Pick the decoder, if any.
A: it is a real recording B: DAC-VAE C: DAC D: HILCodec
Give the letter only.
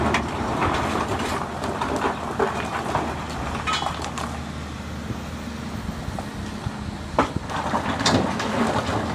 A